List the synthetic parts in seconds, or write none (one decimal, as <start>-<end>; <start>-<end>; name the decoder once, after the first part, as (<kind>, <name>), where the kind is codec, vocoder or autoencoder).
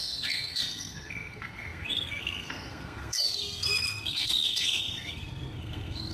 0.0-6.1 (codec, SNAC)